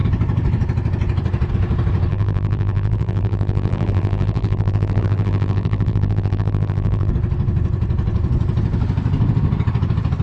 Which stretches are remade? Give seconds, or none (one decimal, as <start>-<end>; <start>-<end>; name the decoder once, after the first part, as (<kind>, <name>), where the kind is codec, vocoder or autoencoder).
2.1-7.1 (vocoder, BigVGAN v2)